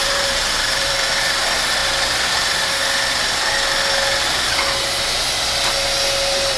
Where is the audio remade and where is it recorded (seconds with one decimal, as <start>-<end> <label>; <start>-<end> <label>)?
0.0-1.3 remade; 1.3-6.6 recorded